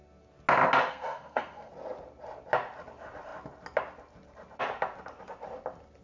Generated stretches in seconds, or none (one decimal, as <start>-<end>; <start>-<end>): 0.9-1.7